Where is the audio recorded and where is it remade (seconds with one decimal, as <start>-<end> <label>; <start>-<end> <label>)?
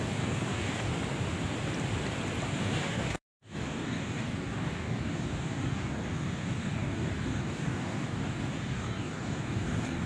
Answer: 0.0-0.9 remade; 0.9-2.5 recorded; 2.5-10.1 remade